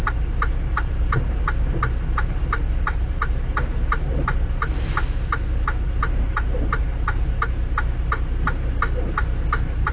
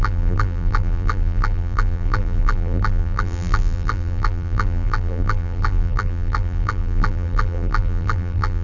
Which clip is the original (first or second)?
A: first